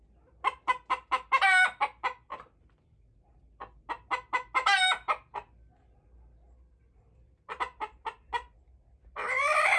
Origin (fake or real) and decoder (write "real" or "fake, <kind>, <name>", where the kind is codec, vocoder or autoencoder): real